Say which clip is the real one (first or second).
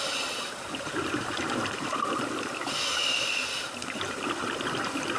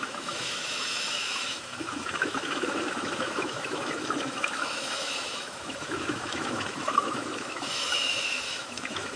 first